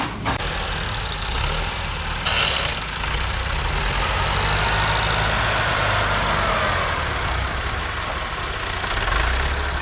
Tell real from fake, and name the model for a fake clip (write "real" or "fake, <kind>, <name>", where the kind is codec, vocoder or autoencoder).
real